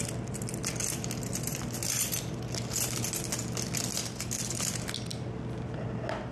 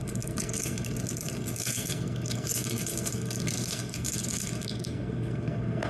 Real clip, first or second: first